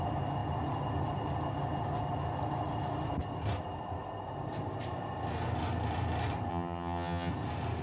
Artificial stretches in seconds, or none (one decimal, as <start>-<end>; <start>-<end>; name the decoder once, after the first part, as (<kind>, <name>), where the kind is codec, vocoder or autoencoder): 6.5-7.3 (vocoder, HiFi-GAN)

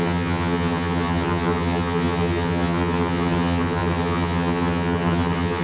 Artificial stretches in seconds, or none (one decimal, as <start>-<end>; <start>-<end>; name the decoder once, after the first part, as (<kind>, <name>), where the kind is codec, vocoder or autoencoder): 0.0-5.6 (vocoder, HiFi-GAN)

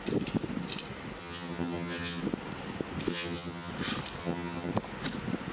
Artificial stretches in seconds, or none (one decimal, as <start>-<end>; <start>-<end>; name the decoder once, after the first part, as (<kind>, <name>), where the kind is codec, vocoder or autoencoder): 1.2-2.2 (vocoder, HiFi-GAN); 3.1-3.7; 4.2-4.7

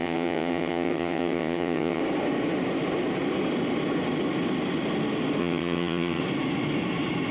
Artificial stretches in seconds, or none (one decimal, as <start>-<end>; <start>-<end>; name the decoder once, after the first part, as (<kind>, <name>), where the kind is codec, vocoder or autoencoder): 0.0-2.0 (vocoder, HiFi-GAN); 5.4-6.2

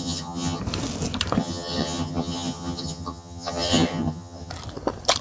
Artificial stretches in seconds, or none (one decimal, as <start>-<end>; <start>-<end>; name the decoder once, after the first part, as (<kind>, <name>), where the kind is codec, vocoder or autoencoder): 0.0-0.6 (vocoder, HiFi-GAN); 1.4-4.5